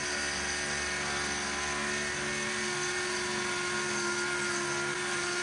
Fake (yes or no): no